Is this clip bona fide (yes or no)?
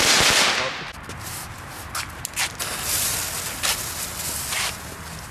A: yes